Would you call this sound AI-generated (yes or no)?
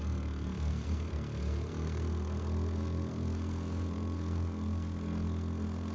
yes